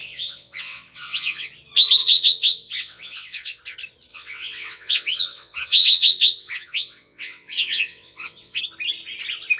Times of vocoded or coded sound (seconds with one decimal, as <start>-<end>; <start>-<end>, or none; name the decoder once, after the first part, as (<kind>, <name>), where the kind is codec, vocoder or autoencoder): 0.0-1.5 (vocoder, WaveNeXt); 2.0-3.6; 4.1-8.6